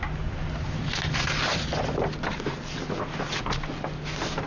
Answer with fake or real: real